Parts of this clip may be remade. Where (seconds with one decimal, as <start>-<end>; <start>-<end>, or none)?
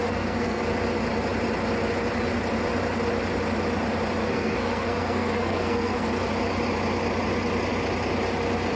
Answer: 0.0-0.6; 4.2-6.1